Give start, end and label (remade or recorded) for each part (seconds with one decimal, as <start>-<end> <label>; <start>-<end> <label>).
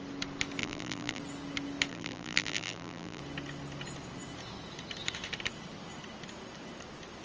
0.0-0.6 recorded; 0.6-1.2 remade; 1.2-1.9 recorded; 1.9-3.2 remade; 3.2-7.2 recorded